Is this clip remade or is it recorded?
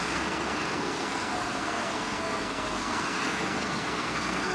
remade